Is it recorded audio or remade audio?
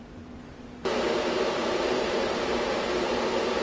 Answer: remade